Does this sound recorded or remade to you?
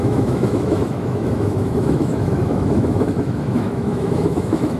remade